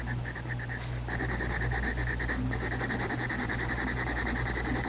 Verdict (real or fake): real